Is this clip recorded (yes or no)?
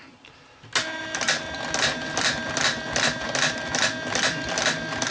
yes